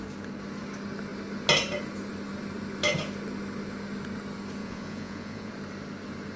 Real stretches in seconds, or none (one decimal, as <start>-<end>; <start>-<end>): 0.0-4.6; 5.5-6.4

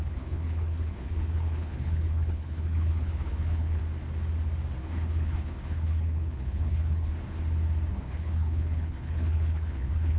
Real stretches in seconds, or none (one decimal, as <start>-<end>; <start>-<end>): 3.8-4.8; 7.1-7.9

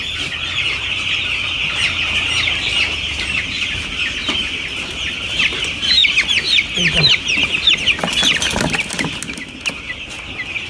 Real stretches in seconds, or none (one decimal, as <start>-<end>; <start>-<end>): 0.0-10.7